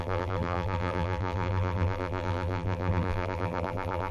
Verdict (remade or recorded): remade